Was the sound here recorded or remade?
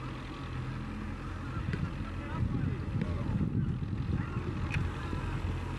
recorded